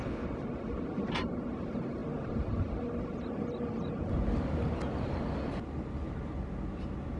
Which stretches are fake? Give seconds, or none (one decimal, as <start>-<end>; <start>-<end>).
none